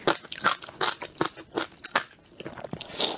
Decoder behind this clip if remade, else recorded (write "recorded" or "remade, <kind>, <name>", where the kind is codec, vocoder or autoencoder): recorded